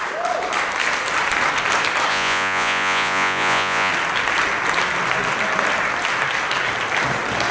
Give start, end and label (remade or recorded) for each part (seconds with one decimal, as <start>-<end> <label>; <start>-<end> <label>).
0.0-2.1 recorded; 2.1-3.9 remade; 3.9-7.5 recorded